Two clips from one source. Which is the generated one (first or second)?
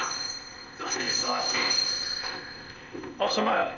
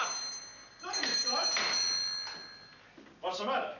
first